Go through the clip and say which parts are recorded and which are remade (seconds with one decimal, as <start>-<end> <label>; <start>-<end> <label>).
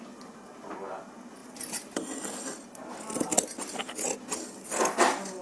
0.0-5.4 recorded